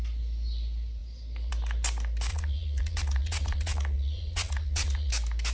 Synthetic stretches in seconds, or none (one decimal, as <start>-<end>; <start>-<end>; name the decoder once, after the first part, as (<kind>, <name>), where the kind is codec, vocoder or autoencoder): 2.3-5.1 (vocoder, Vocos)